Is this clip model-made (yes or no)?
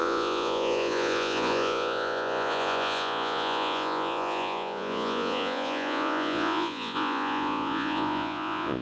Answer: yes